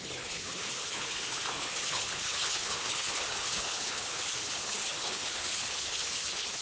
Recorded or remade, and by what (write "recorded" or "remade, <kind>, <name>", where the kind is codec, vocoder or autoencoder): remade, codec, HILCodec